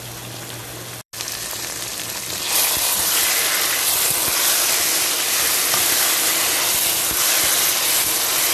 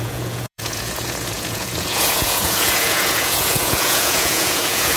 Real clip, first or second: first